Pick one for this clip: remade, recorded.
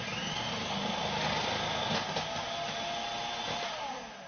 recorded